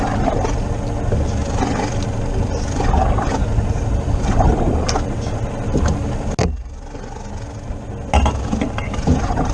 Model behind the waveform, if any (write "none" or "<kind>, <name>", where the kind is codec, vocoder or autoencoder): none